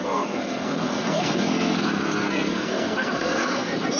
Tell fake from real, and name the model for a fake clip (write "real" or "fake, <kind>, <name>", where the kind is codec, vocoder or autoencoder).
fake, codec, SNAC